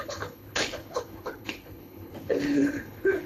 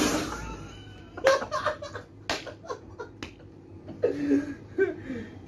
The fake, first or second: first